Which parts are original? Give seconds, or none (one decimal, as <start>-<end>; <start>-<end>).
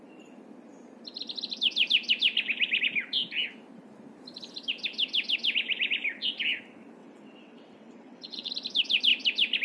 0.0-7.0; 8.5-9.6